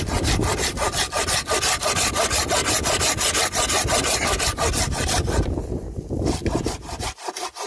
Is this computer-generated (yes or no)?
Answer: no